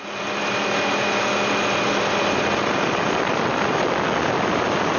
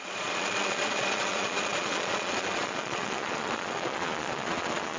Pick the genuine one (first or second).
first